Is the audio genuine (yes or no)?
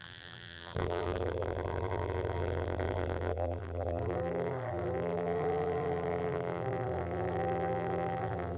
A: no